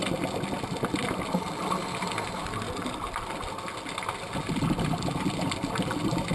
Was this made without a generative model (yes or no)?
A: yes